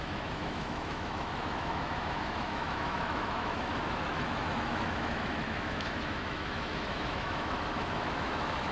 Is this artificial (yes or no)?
yes